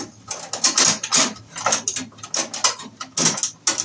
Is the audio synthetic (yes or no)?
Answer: no